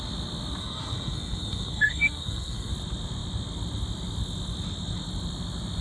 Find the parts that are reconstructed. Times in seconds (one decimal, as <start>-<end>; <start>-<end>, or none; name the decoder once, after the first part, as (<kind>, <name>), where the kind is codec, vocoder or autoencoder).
0.6-2.7 (codec, SNAC)